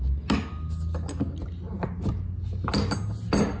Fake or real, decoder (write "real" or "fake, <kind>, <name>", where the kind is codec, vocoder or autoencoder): real